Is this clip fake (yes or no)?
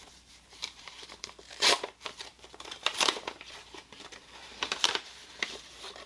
yes